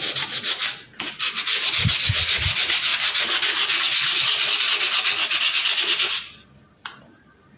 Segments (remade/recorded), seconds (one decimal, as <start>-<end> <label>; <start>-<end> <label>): 0.0-7.6 recorded